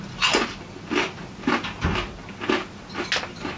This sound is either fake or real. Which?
real